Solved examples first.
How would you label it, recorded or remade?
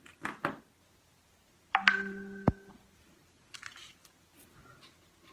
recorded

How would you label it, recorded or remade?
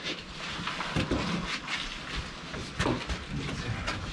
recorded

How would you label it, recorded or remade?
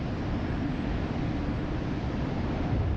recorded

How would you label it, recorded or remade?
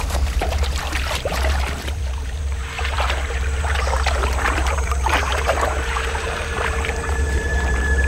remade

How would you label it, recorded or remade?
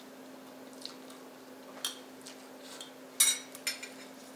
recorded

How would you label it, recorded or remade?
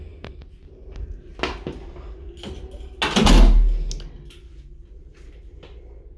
recorded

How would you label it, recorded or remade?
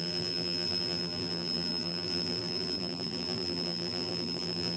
remade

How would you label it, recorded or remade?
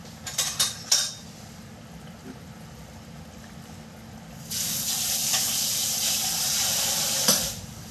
remade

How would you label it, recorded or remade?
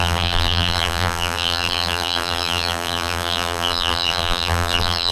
remade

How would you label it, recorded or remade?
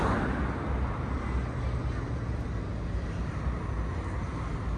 recorded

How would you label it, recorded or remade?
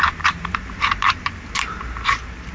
remade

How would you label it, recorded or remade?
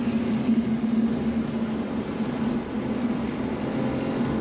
recorded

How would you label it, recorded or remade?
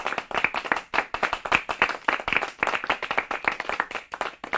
recorded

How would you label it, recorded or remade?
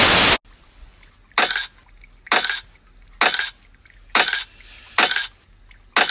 recorded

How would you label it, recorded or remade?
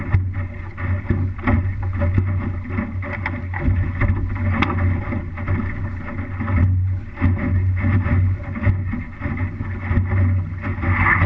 recorded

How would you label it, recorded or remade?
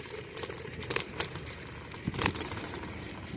remade